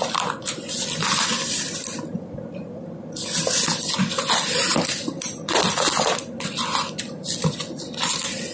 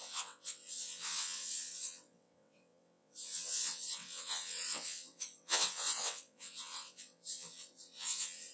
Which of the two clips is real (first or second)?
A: first